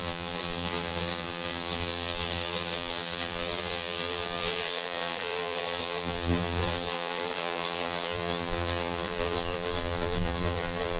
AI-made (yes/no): yes